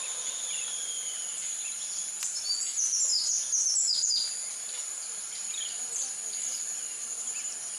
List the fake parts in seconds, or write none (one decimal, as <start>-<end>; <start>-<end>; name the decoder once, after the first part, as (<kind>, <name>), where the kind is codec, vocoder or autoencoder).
none